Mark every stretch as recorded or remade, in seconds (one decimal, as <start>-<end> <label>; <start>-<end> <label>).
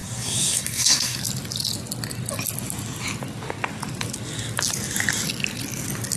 0.0-1.2 remade; 1.2-6.2 recorded